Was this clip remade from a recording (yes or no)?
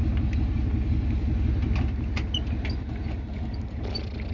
no